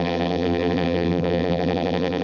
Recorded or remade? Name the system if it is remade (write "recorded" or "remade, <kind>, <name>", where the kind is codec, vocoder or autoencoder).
remade, vocoder, BigVGAN v2